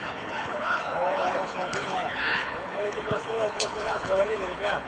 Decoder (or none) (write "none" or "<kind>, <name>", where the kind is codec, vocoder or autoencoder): codec, HILCodec